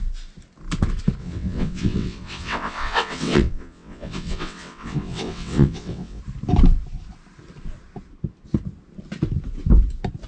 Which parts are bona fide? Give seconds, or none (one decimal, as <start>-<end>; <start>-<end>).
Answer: 0.0-1.2; 6.2-10.3